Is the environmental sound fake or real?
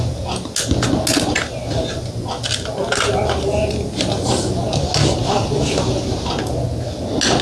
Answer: real